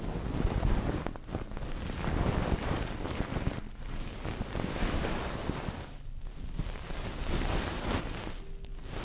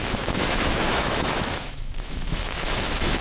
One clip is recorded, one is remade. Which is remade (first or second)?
second